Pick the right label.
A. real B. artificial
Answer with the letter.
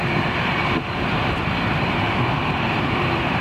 B